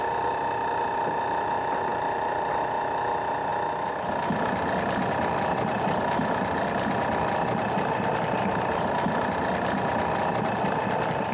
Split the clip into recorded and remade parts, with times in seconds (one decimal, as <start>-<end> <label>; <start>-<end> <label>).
0.0-3.5 remade; 3.5-5.1 recorded; 5.1-11.3 remade